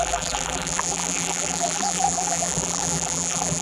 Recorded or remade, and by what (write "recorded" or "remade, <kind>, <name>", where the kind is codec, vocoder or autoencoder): remade, vocoder, BigVGAN v2